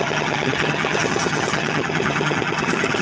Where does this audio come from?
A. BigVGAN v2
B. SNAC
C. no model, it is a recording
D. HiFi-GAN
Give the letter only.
D